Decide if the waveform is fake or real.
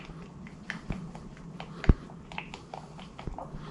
real